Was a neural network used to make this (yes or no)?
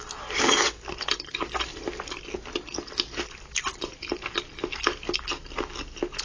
no